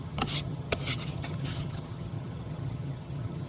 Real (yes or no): no